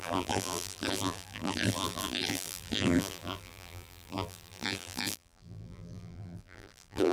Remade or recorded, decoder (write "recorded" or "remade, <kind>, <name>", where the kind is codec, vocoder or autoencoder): remade, vocoder, BigVGAN v2